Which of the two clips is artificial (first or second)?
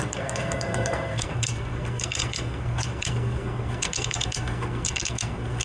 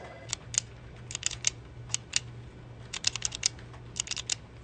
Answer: first